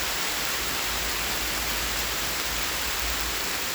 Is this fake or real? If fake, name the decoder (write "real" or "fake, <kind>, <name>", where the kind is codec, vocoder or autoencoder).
real